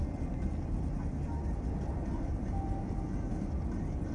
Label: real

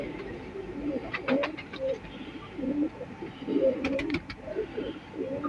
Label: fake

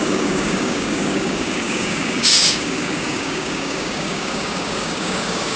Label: fake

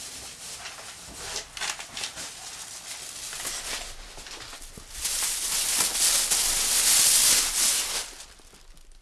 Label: real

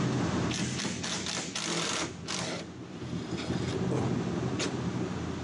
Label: real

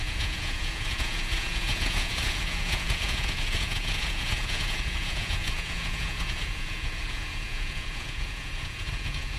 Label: fake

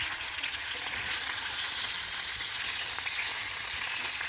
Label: fake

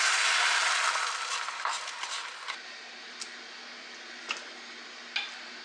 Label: real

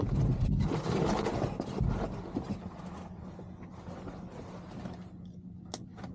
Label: real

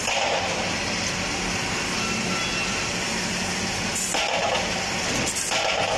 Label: real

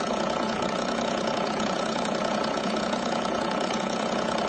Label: fake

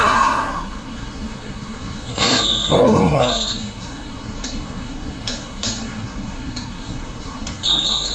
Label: fake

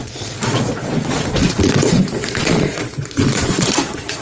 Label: fake